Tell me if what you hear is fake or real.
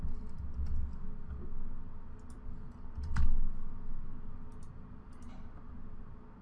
real